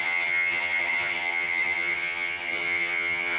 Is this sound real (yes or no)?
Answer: no